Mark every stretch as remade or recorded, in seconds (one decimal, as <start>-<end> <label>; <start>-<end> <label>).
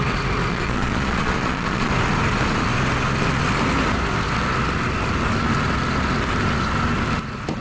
0.0-0.5 recorded; 0.5-1.9 remade; 1.9-7.6 recorded